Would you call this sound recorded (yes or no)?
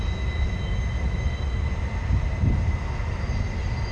yes